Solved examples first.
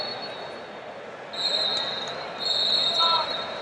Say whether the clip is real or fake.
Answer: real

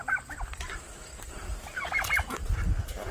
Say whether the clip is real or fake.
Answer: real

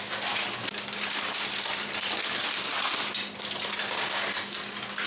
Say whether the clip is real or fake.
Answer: real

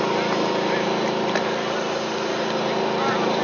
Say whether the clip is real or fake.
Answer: real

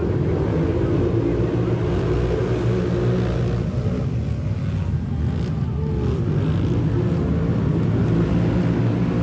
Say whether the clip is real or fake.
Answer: real